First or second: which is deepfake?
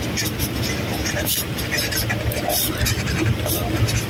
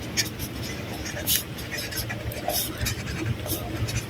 first